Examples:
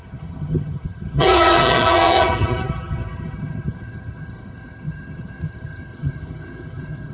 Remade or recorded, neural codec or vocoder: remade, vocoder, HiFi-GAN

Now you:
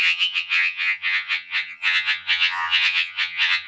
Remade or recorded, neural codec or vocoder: remade, vocoder, HiFi-GAN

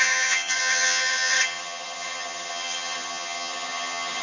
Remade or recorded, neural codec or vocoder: remade, vocoder, HiFi-GAN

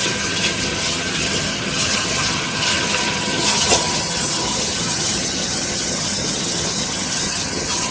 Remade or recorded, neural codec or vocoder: remade, vocoder, HiFi-GAN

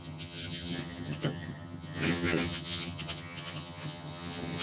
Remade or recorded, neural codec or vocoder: remade, vocoder, HiFi-GAN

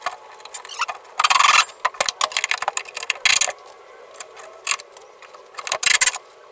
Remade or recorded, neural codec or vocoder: recorded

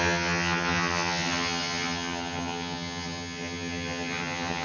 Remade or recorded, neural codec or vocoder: remade, vocoder, HiFi-GAN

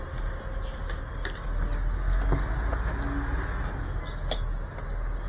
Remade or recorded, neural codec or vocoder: recorded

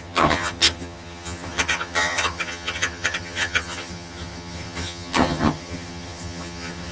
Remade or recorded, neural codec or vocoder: remade, vocoder, HiFi-GAN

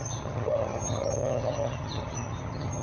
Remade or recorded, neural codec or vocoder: remade, vocoder, HiFi-GAN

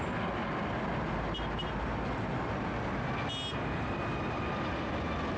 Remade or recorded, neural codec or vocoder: recorded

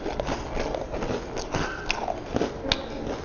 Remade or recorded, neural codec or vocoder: recorded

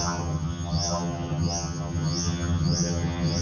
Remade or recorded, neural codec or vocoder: remade, vocoder, HiFi-GAN